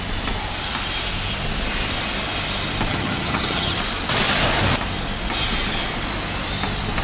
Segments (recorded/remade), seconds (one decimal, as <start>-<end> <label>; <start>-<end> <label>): 0.0-2.9 recorded; 2.9-3.8 remade; 3.8-7.0 recorded